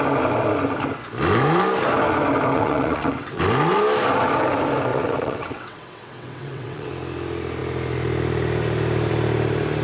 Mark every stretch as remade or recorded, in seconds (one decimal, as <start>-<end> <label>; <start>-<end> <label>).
0.0-2.5 recorded; 2.5-3.4 remade; 3.4-4.9 recorded; 4.9-6.9 remade; 6.9-9.8 recorded